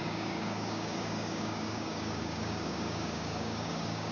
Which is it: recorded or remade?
remade